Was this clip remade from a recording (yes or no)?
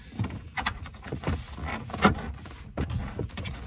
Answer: yes